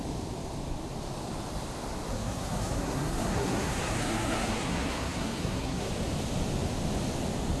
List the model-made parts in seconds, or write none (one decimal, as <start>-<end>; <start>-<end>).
2.1-5.9